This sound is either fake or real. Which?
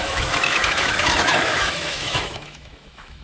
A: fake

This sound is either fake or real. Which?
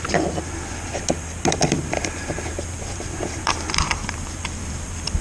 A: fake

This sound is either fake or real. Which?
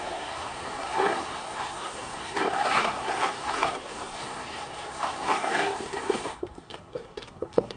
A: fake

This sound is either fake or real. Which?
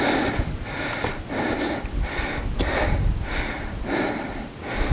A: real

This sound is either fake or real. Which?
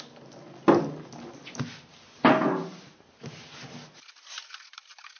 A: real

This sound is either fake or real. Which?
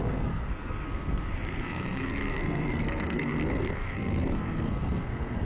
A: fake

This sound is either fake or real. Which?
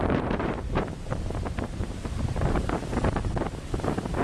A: fake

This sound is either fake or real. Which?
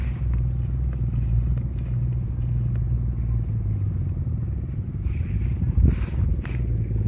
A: real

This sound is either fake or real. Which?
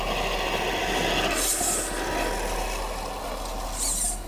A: real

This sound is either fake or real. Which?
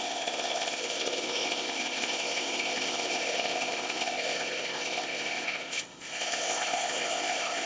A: fake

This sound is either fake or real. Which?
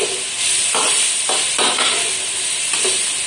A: real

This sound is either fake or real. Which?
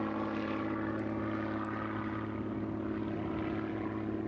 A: real